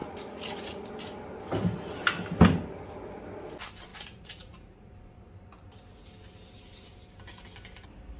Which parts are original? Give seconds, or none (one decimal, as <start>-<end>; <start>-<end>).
0.9-3.9; 4.9-8.2